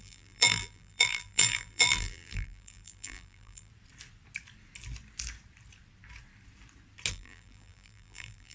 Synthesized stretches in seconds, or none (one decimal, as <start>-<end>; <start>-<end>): 0.0-3.7; 7.1-8.5